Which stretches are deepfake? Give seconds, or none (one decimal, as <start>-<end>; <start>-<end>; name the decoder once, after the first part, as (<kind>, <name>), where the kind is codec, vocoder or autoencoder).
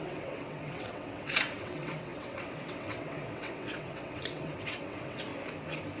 0.0-5.3 (vocoder, WaveNeXt)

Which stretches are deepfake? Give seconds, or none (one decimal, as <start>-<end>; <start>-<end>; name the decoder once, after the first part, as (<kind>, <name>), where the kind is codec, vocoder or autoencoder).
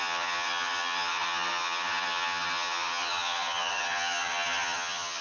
0.0-5.2 (vocoder, HiFi-GAN)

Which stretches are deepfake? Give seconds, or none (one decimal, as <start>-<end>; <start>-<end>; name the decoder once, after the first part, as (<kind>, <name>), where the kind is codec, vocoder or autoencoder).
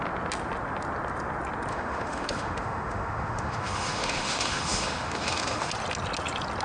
1.7-5.7 (autoencoder, DAC-VAE)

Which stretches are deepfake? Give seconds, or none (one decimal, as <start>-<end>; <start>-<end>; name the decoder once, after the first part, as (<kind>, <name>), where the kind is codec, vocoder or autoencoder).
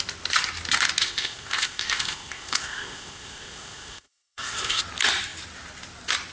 1.0-4.8 (codec, ZipCodec)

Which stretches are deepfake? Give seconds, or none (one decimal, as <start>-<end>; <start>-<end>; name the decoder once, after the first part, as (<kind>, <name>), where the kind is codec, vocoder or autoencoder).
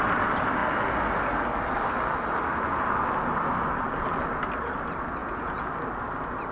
5.2-5.7 (vocoder, Vocos)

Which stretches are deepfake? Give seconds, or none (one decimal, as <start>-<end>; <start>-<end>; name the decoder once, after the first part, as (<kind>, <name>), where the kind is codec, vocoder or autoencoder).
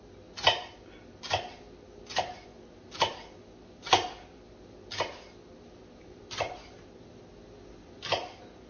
none